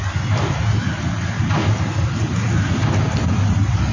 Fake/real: real